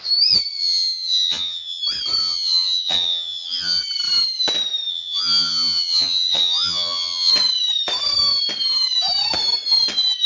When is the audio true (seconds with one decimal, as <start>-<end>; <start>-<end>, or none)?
0.0-0.6; 1.8-2.2; 3.8-4.9; 7.3-10.3